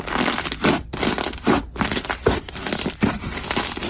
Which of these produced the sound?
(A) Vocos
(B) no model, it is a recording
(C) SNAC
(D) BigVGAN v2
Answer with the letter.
B